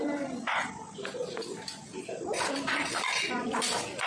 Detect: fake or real real